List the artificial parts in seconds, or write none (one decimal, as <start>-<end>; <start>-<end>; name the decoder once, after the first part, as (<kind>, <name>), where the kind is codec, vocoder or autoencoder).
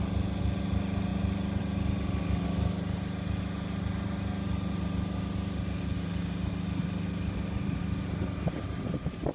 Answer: none